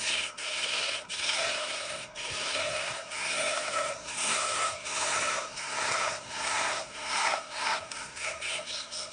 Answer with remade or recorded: remade